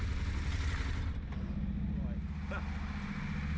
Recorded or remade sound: recorded